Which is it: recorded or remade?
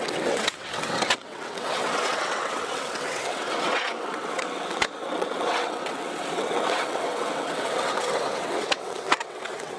remade